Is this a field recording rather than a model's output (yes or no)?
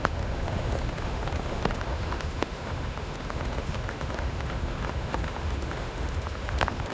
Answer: no